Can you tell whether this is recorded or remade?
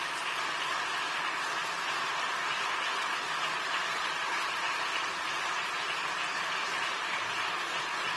recorded